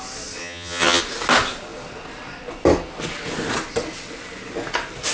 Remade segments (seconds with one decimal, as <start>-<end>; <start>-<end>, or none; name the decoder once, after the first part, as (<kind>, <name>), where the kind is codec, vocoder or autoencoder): 0.4-1.0 (vocoder, HiFi-GAN)